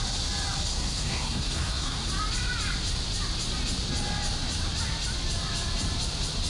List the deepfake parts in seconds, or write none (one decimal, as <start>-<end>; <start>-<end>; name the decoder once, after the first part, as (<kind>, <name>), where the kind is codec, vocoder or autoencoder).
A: 0.7-2.1 (codec, SNAC)